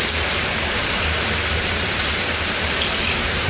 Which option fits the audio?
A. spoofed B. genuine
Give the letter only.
A